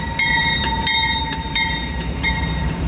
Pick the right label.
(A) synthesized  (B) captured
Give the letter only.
A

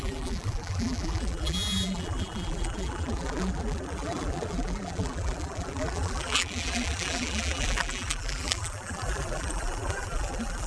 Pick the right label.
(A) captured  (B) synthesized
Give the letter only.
B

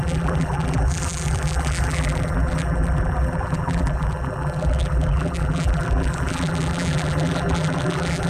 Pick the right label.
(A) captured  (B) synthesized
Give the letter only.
B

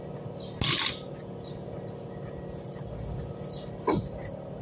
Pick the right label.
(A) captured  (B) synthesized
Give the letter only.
A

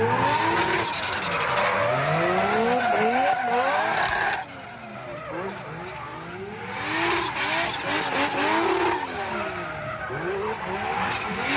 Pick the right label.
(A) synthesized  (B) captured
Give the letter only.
B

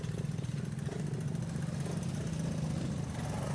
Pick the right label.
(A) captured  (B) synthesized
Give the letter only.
A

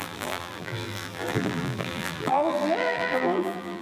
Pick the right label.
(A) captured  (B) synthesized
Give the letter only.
B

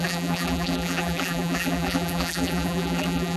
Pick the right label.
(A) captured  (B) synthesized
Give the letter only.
B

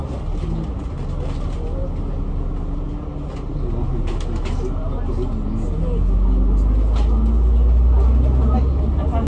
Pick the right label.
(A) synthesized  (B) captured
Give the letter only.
B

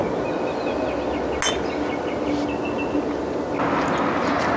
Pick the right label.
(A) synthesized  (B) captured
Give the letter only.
B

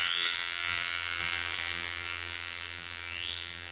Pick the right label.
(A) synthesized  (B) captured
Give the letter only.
A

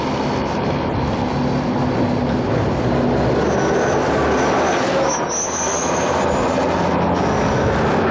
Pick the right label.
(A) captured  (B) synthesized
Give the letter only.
A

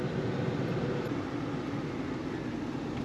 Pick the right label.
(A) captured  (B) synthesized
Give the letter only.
A